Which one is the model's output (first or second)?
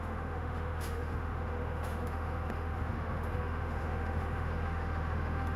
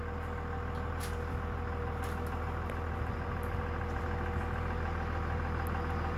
first